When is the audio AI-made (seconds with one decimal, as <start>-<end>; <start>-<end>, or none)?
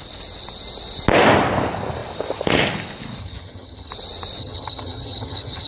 3.2-3.9; 4.4-5.7